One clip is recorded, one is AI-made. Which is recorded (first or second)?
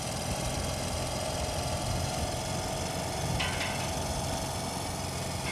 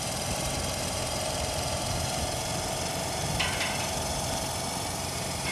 first